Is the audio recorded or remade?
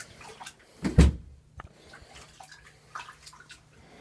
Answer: recorded